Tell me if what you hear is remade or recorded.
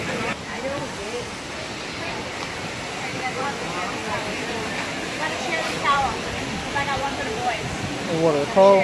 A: recorded